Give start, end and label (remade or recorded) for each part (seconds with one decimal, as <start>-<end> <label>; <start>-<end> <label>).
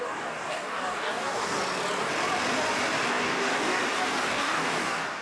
0.0-1.6 remade; 1.6-3.1 recorded; 3.1-3.8 remade; 3.8-4.3 recorded; 4.3-5.2 remade